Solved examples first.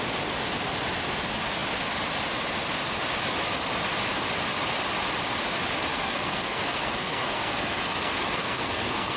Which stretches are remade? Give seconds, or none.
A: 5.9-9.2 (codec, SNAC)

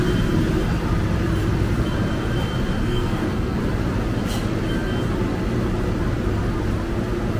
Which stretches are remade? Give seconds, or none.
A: 2.8-3.6 (codec, SNAC)

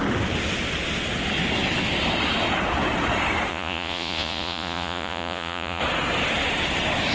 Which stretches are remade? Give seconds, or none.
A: 3.5-5.8 (vocoder, Vocos)

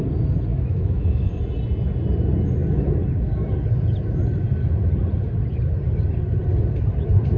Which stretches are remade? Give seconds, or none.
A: 0.5-1.4 (autoencoder, DAC-VAE)

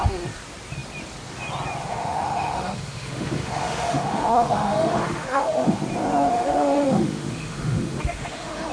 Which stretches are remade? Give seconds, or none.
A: 1.8-5.8 (autoencoder, DAC-VAE); 6.3-8.7

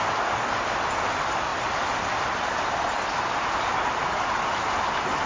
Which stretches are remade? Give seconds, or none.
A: none

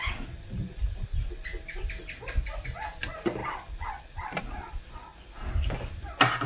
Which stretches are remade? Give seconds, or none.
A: 3.4-4.4 (vocoder, BigVGAN v2)